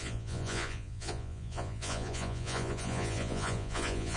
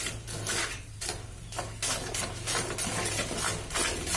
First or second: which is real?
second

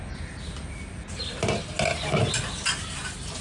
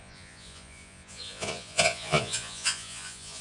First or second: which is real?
first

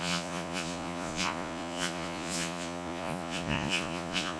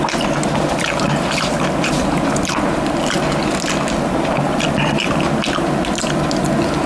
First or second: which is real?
second